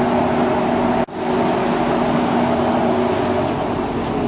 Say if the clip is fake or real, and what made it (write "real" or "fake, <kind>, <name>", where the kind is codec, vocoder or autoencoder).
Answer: real